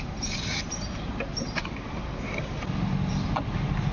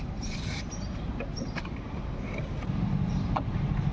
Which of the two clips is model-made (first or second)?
second